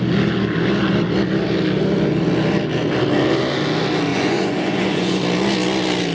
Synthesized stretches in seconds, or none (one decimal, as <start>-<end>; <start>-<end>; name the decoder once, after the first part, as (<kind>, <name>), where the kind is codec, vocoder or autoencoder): 4.1-5.2 (vocoder, Vocos)